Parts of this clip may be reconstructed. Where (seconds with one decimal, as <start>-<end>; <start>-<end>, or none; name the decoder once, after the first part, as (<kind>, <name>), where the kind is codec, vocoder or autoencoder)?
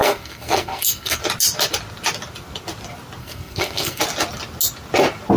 0.0-1.2 (codec, SNAC); 3.2-4.0